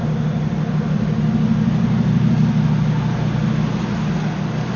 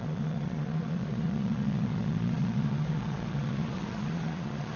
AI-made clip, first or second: second